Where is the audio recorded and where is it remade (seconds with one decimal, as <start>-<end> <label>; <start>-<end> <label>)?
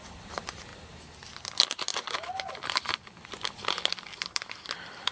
0.0-0.7 remade; 0.7-1.4 recorded; 1.4-5.1 remade